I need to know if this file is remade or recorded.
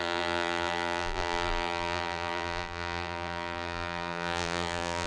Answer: remade